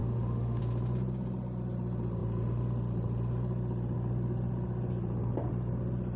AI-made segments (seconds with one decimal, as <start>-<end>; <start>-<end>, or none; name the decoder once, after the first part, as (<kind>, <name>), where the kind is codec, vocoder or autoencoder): 0.0-0.6 (autoencoder, DAC-VAE)

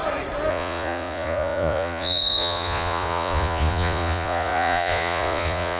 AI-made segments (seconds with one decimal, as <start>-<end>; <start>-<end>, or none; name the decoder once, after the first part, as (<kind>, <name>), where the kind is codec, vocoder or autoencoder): 0.5-5.8 (vocoder, Vocos)

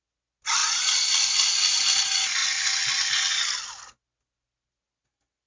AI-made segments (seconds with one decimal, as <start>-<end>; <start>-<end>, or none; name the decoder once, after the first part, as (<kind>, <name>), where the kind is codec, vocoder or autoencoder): none

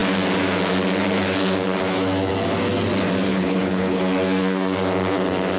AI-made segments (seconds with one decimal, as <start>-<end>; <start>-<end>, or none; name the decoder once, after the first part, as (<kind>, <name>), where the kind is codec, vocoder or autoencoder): 3.3-4.0 (codec, HILCodec)

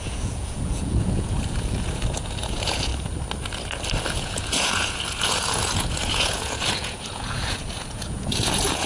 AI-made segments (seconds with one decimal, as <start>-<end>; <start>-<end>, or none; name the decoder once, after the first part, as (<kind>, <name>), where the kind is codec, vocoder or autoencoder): 0.0-2.9 (vocoder, Vocos); 4.1-8.9

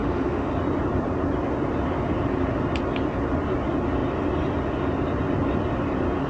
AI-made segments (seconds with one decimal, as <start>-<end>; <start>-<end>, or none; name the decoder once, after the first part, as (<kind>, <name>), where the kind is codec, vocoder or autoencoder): 0.0-0.5 (autoencoder, DAC-VAE)

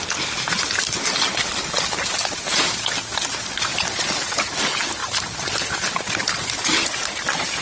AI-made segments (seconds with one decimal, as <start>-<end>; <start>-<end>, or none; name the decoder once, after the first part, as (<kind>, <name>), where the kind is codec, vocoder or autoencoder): 3.7-4.6 (vocoder, BigVGAN v2); 5.0-6.8